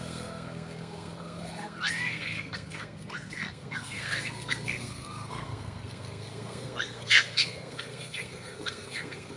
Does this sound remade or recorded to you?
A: remade